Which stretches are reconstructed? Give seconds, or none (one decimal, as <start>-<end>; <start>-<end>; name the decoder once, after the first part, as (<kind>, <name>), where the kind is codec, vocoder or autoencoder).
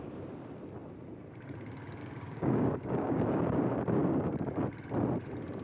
2.0-3.6 (codec, DAC); 4.0-4.5